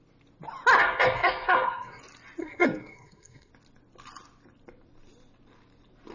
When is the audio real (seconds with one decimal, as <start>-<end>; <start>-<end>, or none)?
0.0-0.8; 2.0-2.4; 3.5-6.1